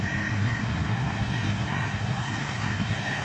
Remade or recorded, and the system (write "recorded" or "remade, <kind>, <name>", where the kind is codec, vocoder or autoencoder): remade, codec, SNAC